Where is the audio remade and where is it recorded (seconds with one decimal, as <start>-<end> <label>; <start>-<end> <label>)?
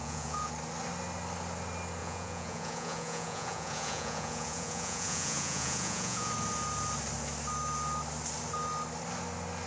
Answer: 0.0-0.5 remade; 0.5-2.0 recorded; 2.0-6.3 remade; 6.3-9.7 recorded